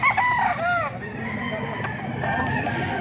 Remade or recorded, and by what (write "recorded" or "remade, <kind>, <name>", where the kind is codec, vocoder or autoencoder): recorded